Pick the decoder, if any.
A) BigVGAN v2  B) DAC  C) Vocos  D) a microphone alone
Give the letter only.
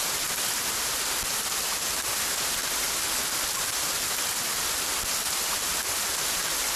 D